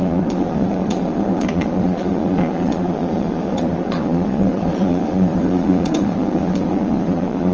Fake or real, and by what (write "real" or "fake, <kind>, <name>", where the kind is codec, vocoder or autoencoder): fake, vocoder, Vocos